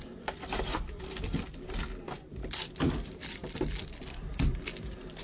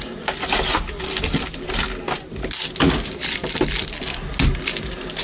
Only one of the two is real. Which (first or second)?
second